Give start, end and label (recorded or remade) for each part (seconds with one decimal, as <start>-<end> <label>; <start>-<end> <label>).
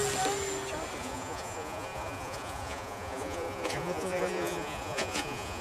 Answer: 0.0-1.0 recorded; 1.0-5.6 remade